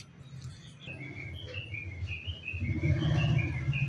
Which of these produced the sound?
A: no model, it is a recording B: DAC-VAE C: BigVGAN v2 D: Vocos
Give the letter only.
A